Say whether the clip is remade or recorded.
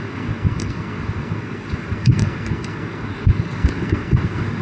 remade